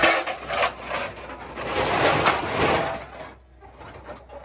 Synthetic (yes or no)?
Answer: no